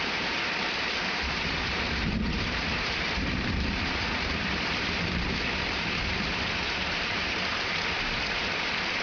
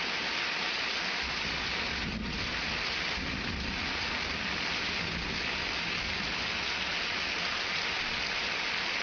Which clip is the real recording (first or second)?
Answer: second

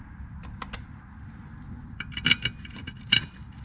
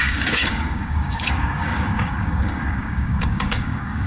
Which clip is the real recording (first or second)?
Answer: first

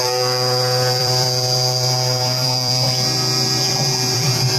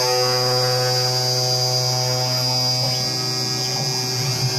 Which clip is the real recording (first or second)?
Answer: second